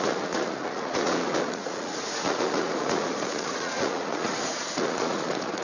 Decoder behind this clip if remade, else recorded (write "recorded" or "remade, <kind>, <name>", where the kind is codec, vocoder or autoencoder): remade, vocoder, Vocos